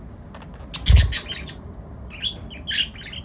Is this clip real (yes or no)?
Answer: yes